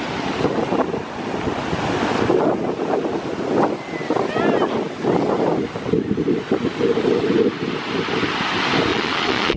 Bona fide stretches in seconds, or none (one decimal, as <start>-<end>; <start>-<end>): 0.0-8.9